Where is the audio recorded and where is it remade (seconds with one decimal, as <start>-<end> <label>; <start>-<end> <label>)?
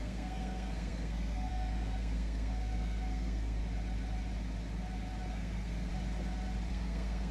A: 0.0-3.6 remade; 3.6-5.3 recorded; 5.3-5.9 remade; 5.9-6.7 recorded; 6.7-7.3 remade